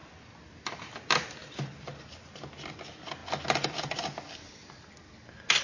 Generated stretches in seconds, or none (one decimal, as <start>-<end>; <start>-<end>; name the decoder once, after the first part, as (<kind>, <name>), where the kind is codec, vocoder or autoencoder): none

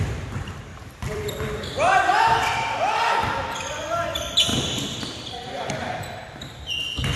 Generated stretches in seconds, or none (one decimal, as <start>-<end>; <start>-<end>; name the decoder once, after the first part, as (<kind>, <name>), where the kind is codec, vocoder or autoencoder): 0.7-2.2 (vocoder, BigVGAN v2); 3.2-3.8; 4.5-5.7

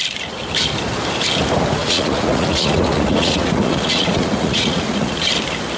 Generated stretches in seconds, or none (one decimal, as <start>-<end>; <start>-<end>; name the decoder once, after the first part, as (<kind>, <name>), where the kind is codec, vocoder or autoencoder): 1.8-5.3 (vocoder, Vocos)

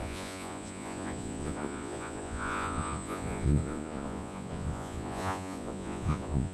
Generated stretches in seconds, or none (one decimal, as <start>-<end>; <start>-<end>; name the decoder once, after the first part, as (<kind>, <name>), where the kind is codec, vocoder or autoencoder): 0.0-6.5 (vocoder, Vocos)

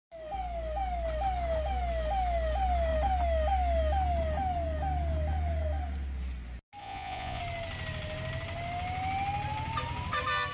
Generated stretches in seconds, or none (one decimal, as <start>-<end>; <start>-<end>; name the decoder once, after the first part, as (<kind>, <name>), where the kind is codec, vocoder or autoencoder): 6.8-7.4 (vocoder, Vocos)

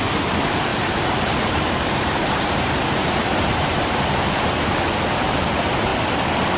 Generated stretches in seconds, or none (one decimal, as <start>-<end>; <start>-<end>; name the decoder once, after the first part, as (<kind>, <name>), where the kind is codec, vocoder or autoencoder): 0.7-4.1 (vocoder, BigVGAN v2)

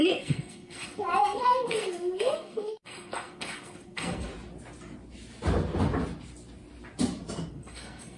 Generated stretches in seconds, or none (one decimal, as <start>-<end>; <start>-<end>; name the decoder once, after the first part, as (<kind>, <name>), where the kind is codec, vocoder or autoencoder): 0.0-4.3 (codec, SNAC); 7.5-8.2

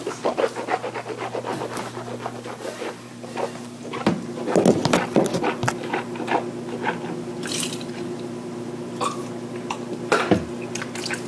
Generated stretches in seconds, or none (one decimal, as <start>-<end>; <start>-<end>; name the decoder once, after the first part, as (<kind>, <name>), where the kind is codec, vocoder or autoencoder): 1.5-3.1 (vocoder, BigVGAN v2); 4.8-6.3